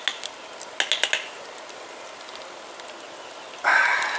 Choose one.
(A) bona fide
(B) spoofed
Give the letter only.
A